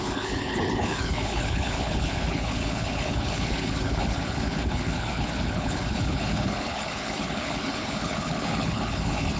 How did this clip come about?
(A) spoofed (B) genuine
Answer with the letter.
A